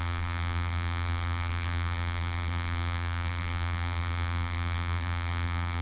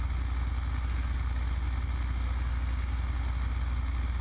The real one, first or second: second